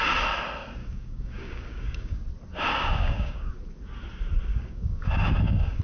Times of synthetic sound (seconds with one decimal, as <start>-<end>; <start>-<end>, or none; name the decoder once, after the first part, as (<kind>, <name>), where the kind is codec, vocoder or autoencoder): 0.8-2.2 (codec, DAC); 2.7-3.5; 4.5-5.8

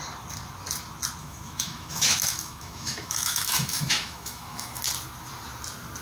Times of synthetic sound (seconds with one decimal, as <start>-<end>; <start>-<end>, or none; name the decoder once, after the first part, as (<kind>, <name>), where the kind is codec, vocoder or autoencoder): 1.2-4.8 (autoencoder, DAC-VAE)

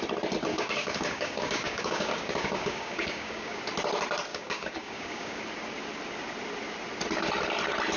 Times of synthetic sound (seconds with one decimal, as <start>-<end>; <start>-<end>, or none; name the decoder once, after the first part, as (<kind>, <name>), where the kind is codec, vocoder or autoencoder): 0.5-3.6 (codec, DAC); 4.3-5.4

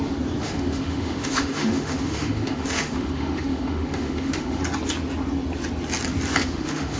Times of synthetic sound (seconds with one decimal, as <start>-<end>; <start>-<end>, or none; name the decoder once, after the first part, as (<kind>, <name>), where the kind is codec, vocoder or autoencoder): 0.4-4.6 (autoencoder, DAC-VAE); 6.4-7.0

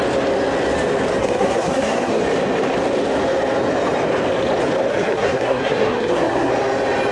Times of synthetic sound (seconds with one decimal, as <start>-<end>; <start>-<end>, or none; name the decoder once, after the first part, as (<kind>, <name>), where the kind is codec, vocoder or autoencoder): 1.2-2.2 (codec, SNAC); 4.9-6.5

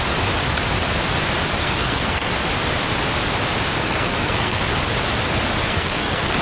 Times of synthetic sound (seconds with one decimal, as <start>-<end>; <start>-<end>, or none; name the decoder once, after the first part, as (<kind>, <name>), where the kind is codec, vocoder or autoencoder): 1.6-2.3 (codec, SNAC); 3.8-4.6; 5.6-6.4